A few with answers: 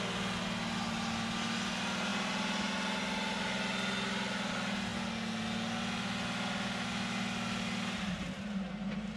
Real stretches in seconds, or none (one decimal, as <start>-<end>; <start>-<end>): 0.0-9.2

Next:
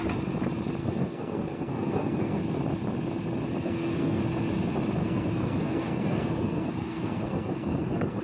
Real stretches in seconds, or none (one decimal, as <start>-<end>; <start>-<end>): 0.0-0.8; 2.4-3.5; 4.2-5.0

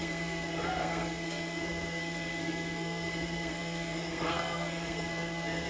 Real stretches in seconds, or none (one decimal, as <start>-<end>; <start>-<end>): none

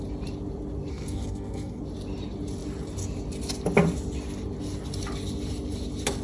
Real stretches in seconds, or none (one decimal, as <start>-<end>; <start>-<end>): 0.0-0.9; 1.8-6.2

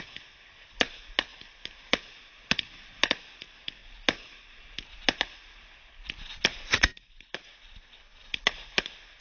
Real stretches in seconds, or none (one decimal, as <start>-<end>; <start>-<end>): 0.0-9.2

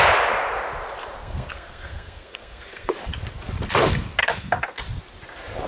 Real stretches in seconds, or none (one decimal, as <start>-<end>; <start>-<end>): 0.0-1.2; 2.9-4.2; 4.8-5.7

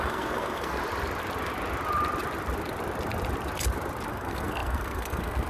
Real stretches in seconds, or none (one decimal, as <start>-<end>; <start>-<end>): 0.8-4.1